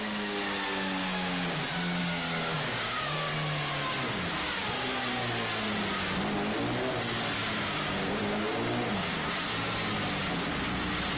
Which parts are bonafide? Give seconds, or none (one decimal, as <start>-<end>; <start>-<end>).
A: 0.0-2.0; 3.3-7.4; 9.3-11.2

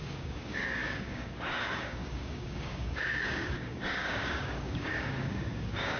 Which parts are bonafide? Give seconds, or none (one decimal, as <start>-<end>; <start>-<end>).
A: none

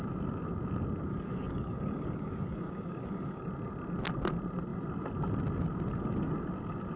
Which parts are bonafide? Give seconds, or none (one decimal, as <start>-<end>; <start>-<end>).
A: 0.0-1.1; 3.4-7.0